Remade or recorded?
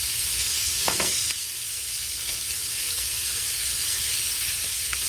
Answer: remade